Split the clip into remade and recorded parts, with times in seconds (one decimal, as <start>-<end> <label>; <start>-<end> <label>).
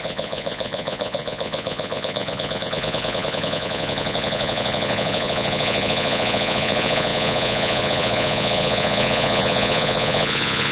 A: 0.0-10.7 remade